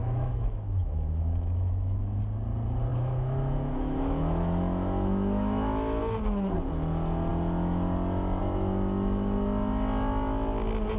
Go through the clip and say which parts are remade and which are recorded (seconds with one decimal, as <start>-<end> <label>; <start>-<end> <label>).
0.0-2.2 remade; 2.2-2.9 recorded; 2.9-6.0 remade; 6.0-11.0 recorded